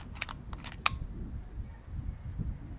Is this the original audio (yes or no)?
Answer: yes